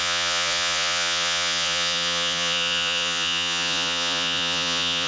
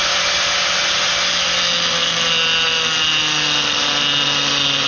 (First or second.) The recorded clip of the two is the second